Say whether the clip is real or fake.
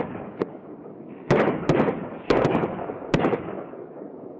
fake